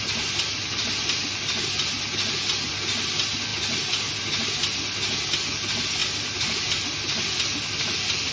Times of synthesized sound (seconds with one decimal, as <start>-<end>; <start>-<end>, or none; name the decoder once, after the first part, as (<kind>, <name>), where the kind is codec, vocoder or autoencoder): none